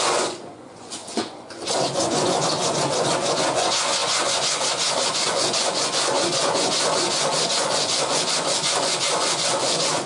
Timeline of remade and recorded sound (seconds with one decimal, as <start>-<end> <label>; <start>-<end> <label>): 0.0-10.1 remade